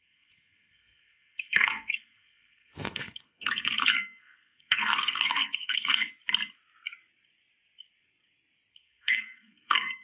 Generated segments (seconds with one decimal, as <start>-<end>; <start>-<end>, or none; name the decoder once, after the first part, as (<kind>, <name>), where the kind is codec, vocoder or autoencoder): 0.0-6.1 (codec, SNAC); 8.7-10.0